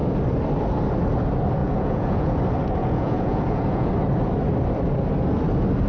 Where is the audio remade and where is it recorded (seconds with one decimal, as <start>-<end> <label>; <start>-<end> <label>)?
0.0-1.6 recorded; 1.6-2.3 remade; 2.3-2.8 recorded; 2.8-3.9 remade; 3.9-5.9 recorded